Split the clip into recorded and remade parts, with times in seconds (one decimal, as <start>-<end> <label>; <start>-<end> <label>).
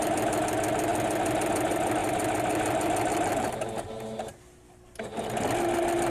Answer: 0.0-6.1 recorded